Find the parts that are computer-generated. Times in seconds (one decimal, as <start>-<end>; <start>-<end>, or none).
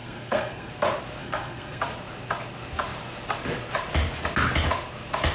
0.0-0.7; 1.2-1.8